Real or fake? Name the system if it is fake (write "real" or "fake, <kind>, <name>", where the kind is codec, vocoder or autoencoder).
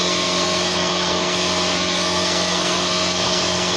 fake, codec, SNAC